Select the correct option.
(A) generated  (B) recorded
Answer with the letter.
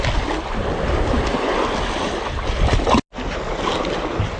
B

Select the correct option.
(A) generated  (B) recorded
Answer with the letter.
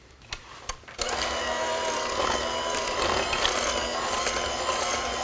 B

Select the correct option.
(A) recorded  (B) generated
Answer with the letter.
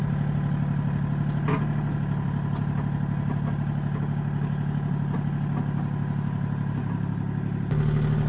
A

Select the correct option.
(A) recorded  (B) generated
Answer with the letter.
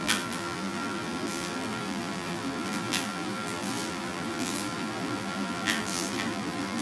B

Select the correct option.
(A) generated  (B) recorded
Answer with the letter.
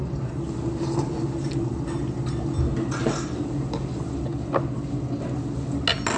B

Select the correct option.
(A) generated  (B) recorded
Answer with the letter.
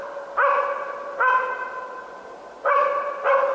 B